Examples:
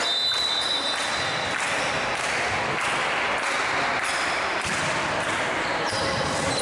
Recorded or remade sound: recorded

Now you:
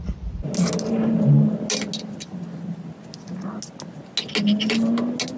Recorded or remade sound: recorded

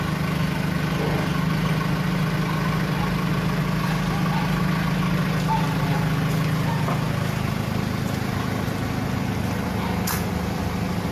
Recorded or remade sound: recorded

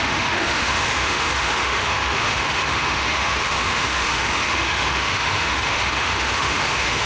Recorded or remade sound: remade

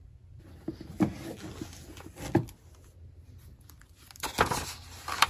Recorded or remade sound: recorded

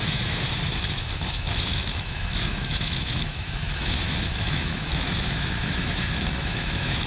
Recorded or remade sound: remade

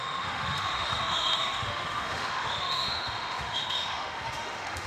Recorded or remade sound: remade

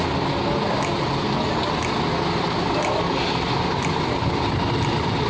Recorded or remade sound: recorded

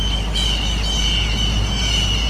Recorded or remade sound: recorded